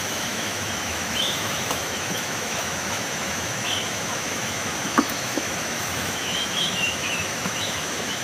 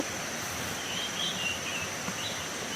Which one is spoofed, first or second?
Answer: first